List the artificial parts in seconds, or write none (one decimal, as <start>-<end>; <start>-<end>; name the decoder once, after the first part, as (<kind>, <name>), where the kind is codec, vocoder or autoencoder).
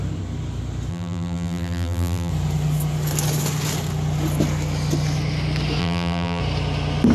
0.9-2.3 (vocoder, BigVGAN v2); 5.8-6.4